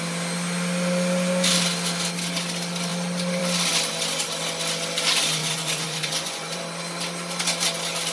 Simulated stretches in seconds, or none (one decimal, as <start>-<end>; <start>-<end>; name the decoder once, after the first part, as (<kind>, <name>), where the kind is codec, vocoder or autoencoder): 5.4-6.6 (vocoder, Vocos)